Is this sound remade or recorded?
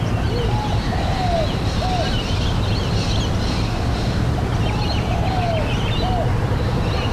recorded